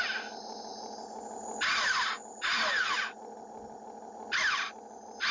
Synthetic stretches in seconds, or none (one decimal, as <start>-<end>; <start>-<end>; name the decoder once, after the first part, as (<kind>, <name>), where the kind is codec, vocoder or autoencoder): none